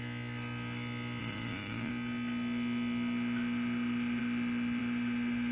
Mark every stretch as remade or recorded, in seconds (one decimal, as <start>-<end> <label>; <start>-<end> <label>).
0.0-1.2 recorded; 1.2-1.9 remade; 1.9-5.5 recorded